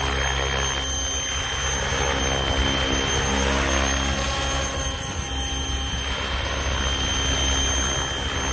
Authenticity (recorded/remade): recorded